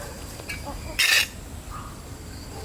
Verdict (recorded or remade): remade